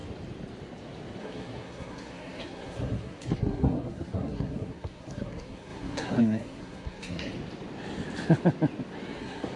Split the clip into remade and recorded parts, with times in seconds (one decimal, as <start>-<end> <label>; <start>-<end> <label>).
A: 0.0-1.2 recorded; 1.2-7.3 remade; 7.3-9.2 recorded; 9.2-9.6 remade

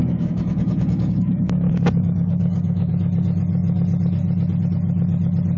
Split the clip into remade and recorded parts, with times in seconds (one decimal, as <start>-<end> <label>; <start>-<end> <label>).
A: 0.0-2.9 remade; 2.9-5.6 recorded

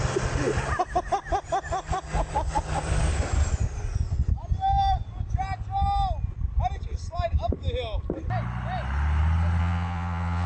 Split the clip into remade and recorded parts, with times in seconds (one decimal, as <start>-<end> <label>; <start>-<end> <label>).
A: 0.0-9.6 recorded; 9.6-10.5 remade

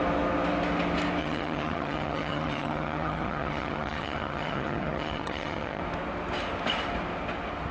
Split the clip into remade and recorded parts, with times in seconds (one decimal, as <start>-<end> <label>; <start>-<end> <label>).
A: 0.0-1.2 recorded; 1.2-5.8 remade; 5.8-7.7 recorded

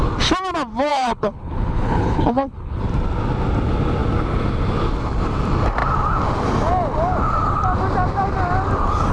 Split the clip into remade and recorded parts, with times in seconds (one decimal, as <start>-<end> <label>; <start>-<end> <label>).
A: 0.0-0.9 recorded; 0.9-2.8 remade; 2.8-9.1 recorded

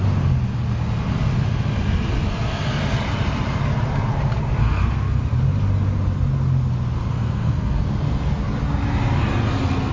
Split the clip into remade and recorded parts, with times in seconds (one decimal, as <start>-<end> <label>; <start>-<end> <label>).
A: 0.0-4.6 recorded; 4.6-5.2 remade; 5.2-7.0 recorded; 7.0-7.8 remade; 7.8-9.9 recorded